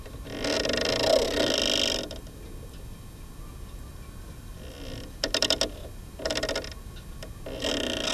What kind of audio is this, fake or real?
real